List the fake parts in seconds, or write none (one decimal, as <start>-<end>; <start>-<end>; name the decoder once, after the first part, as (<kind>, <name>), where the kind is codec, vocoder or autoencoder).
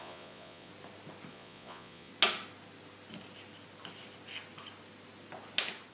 0.0-0.7 (vocoder, Vocos); 1.3-2.1